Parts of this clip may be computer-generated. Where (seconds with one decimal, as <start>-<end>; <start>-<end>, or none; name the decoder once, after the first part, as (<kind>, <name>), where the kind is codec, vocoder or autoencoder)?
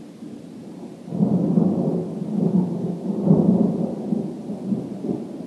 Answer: none